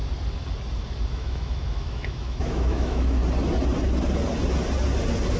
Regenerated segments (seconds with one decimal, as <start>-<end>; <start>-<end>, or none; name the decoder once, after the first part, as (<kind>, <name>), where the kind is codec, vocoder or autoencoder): 1.1-3.2 (autoencoder, DAC-VAE)